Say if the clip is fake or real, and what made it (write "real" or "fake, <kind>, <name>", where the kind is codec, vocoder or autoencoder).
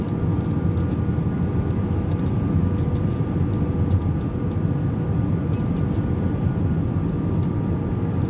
real